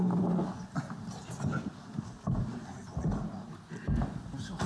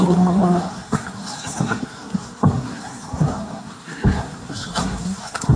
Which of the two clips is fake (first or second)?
second